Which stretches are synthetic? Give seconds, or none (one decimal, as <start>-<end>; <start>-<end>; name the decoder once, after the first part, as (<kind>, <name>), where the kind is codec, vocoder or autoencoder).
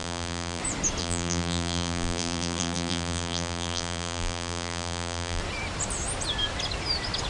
0.0-0.6 (vocoder, BigVGAN v2); 1.0-5.4